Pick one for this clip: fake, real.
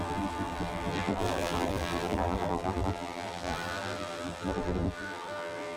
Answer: fake